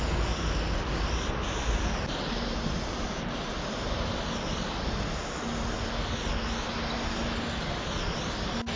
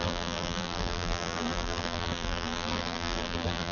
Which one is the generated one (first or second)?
second